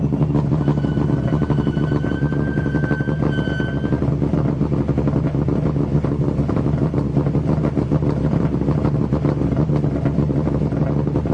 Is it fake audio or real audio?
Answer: real